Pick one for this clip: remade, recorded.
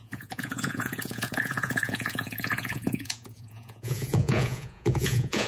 remade